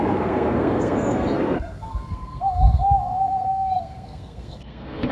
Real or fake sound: fake